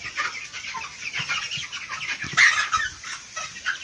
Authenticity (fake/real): real